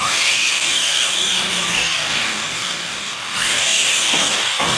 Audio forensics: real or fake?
fake